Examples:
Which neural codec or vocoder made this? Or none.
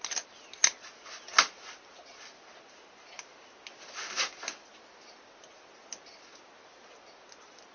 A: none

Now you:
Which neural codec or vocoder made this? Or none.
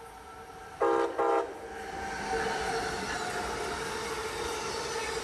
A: none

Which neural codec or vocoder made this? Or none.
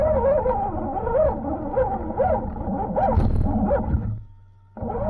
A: none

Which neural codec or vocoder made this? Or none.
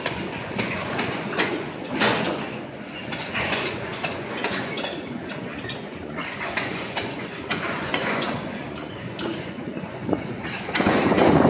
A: vocoder, Vocos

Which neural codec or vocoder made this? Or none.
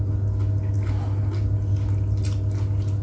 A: none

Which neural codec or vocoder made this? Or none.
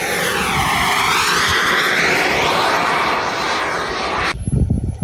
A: none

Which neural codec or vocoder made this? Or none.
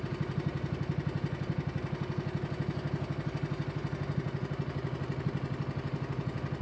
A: none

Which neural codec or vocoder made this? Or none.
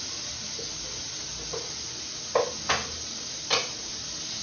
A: none